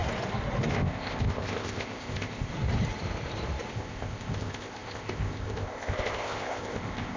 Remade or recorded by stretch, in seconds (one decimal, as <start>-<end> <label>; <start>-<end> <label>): 0.0-0.7 recorded; 0.7-2.5 remade; 2.5-3.7 recorded; 3.7-7.2 remade